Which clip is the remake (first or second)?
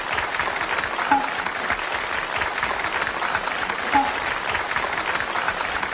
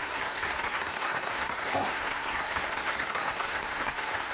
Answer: second